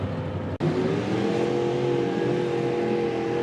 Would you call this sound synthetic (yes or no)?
no